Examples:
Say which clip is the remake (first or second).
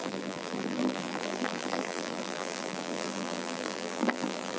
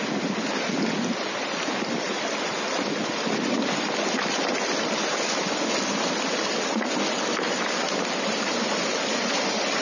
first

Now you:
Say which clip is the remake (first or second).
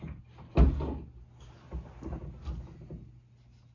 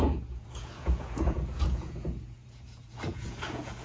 second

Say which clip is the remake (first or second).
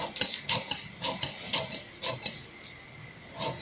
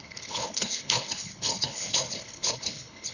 second